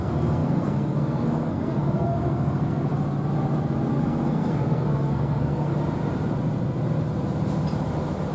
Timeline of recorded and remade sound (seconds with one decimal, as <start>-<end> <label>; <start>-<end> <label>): 0.0-2.9 remade; 2.9-3.9 recorded; 3.9-5.7 remade; 5.7-8.3 recorded

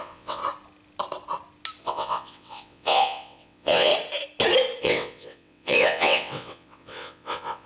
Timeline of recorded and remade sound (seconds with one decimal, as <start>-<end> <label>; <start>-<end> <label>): 0.0-0.4 remade; 0.4-1.8 recorded; 1.8-3.9 remade; 3.9-4.8 recorded; 4.8-7.7 remade

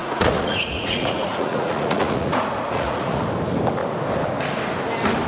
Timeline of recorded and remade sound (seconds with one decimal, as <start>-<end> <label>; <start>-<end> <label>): 0.0-3.2 remade; 3.2-5.3 recorded

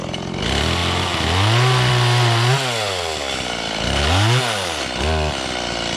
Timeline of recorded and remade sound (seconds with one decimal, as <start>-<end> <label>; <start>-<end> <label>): 0.0-6.0 recorded

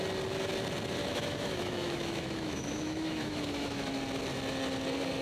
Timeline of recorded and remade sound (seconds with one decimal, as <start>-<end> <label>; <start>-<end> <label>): 0.0-1.0 recorded; 1.0-3.9 remade; 3.9-5.2 recorded

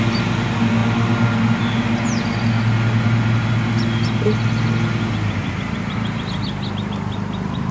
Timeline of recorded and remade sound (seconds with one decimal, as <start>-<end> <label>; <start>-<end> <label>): 0.0-7.7 recorded

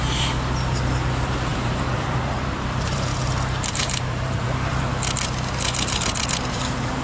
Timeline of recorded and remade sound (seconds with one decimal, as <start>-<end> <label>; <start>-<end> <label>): 0.0-3.1 remade; 3.1-3.7 recorded; 3.7-4.9 remade; 4.9-6.5 recorded; 6.5-7.0 remade

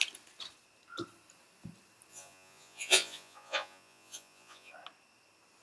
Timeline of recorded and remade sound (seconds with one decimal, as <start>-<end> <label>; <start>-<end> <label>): 0.0-2.1 recorded; 2.1-4.7 remade; 4.7-5.6 recorded